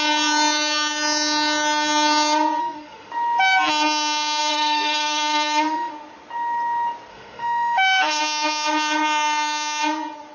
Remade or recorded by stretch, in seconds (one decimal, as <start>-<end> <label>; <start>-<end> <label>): 0.0-2.6 recorded; 2.6-3.1 remade; 3.1-4.4 recorded; 4.4-5.9 remade; 5.9-7.1 recorded; 7.1-8.2 remade; 8.2-10.3 recorded

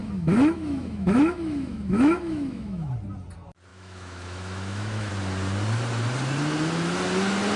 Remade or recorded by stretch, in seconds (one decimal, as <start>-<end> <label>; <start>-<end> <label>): 0.0-2.9 remade; 2.9-3.7 recorded; 3.7-5.1 remade; 5.1-7.6 recorded